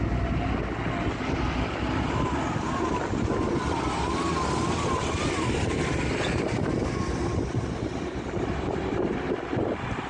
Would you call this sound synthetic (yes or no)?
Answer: no